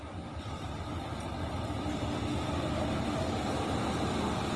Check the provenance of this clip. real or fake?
real